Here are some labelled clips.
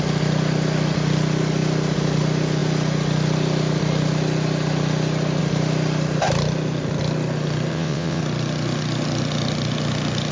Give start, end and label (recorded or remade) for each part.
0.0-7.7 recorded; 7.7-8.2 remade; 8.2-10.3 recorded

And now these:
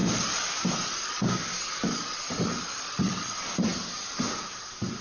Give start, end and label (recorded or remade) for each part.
0.0-5.0 recorded